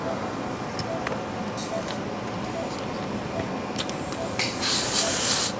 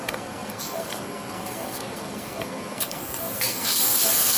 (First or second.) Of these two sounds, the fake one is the second